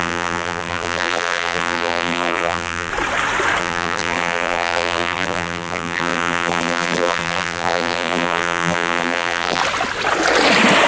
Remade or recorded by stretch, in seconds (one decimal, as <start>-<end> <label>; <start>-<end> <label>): 0.0-2.9 remade; 2.9-3.6 recorded; 3.6-9.6 remade; 9.6-10.9 recorded